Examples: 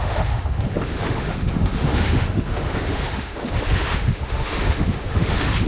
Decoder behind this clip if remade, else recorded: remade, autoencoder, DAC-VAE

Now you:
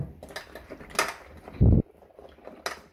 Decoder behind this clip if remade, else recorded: recorded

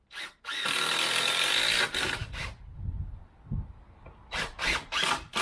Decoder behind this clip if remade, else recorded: recorded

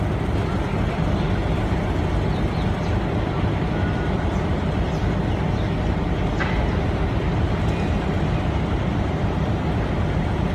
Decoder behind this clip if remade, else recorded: recorded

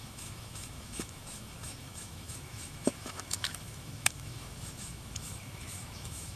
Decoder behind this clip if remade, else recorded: remade, autoencoder, DAC-VAE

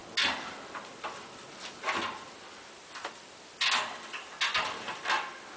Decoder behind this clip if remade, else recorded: recorded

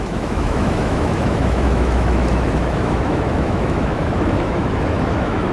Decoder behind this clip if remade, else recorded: remade, autoencoder, DAC-VAE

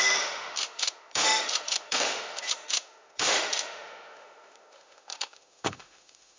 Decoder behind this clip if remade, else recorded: remade, autoencoder, DAC-VAE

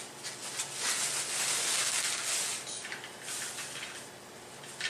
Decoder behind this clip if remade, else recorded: recorded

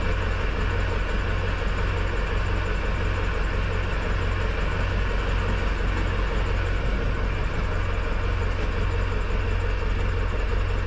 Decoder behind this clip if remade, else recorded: recorded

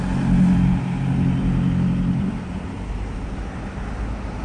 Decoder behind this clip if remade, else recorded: recorded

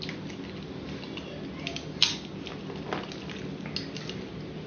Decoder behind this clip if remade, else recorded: recorded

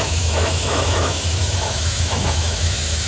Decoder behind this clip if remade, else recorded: remade, autoencoder, DAC-VAE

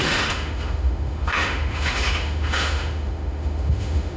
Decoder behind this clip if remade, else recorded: remade, autoencoder, DAC-VAE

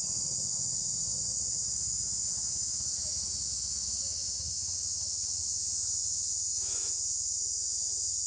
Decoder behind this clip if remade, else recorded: remade, autoencoder, DAC-VAE